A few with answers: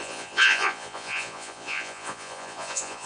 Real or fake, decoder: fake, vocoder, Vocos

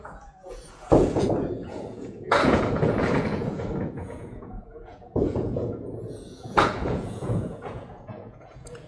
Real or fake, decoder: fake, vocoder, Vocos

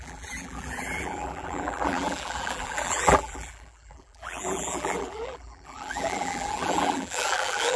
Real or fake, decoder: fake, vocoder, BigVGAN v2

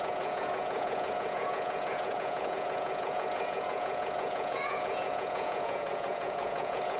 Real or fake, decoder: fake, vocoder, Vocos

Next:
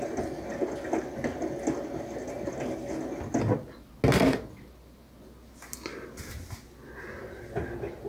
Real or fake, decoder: real